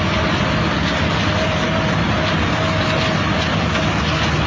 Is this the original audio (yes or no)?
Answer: yes